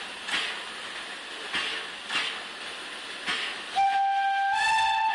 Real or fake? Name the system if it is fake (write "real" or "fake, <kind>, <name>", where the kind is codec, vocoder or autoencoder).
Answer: real